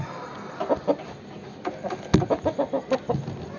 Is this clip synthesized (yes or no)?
no